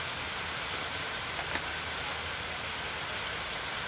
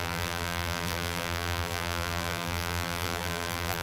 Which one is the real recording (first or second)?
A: first